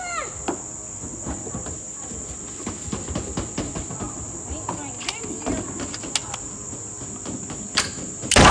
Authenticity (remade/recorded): recorded